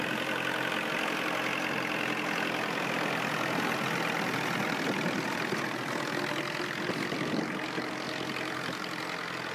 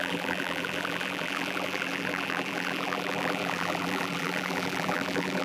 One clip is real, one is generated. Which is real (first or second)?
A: first